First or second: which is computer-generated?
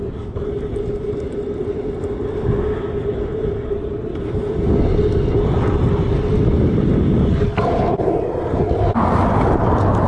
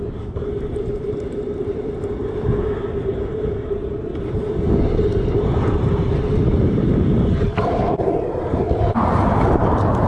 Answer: second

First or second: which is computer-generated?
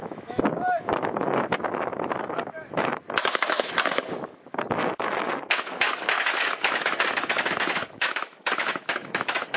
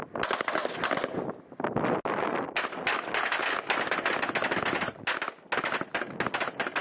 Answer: first